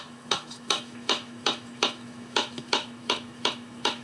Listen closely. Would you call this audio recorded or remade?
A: remade